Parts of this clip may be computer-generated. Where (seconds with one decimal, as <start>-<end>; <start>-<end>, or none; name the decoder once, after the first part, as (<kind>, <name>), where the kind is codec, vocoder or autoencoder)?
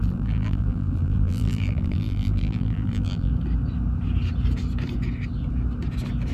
0.0-3.3 (vocoder, BigVGAN v2)